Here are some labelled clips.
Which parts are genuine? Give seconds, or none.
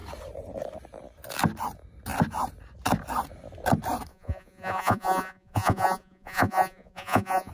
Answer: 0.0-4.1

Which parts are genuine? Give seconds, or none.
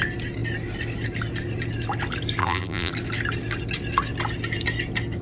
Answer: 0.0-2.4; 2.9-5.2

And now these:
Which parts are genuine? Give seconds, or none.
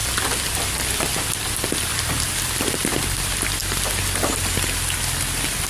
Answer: 0.0-2.3